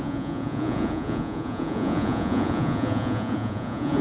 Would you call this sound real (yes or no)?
no